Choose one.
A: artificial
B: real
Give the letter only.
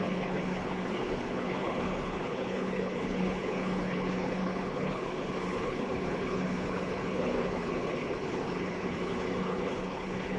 A